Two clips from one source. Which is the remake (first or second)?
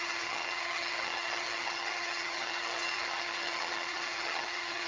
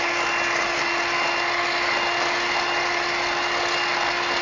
first